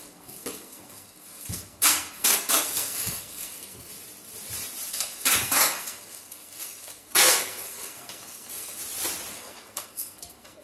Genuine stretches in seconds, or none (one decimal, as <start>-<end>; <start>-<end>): 3.9-4.9; 8.8-9.3